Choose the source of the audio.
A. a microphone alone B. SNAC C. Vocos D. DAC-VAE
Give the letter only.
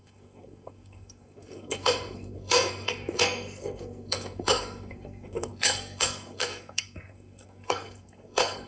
B